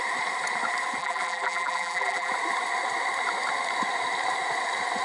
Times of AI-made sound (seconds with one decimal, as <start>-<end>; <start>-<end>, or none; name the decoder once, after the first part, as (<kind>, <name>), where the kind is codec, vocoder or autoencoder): 1.0-2.3 (vocoder, BigVGAN v2)